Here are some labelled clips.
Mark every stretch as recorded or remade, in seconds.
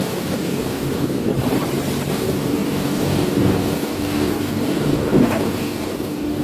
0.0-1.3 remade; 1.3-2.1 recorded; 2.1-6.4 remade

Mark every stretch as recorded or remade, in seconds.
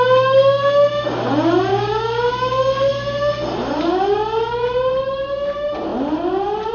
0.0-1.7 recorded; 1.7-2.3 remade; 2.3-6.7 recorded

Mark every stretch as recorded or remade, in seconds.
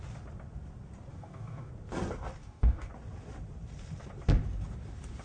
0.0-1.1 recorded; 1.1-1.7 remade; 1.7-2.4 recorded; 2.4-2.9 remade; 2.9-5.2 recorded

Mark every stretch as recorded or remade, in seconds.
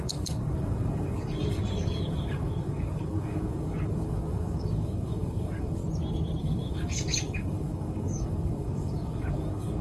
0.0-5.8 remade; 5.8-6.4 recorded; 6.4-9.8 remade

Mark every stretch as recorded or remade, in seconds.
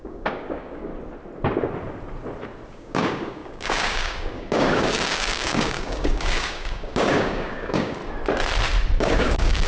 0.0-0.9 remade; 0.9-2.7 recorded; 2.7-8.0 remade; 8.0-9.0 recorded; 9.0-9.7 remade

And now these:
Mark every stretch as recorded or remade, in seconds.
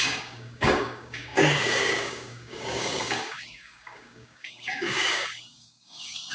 0.0-6.3 remade